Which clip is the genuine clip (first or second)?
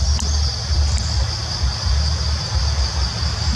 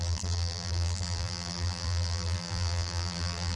first